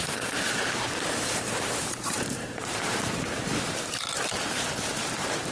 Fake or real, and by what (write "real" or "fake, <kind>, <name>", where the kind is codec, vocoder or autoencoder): fake, vocoder, BigVGAN v2